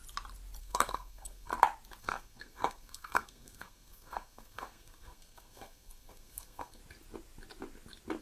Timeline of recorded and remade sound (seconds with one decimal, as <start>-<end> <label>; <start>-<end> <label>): 0.0-0.6 recorded; 0.6-1.5 remade; 1.5-2.0 recorded; 2.0-6.8 remade; 6.8-8.2 recorded